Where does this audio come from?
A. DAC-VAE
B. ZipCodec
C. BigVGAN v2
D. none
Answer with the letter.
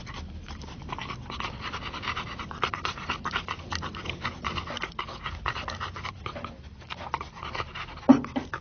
D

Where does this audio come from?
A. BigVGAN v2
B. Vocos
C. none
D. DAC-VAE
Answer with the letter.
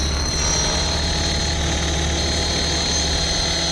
C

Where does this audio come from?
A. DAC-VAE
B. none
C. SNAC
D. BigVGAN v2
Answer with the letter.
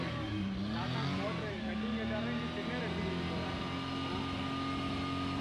B